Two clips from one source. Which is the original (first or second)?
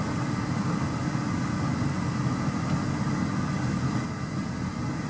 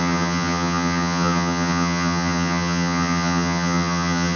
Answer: first